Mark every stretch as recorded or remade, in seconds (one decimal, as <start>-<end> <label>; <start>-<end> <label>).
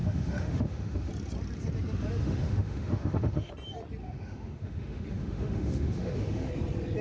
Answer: 0.0-1.1 remade; 1.1-2.2 recorded; 2.2-3.5 remade; 3.5-4.0 recorded; 4.0-6.5 remade; 6.5-7.0 recorded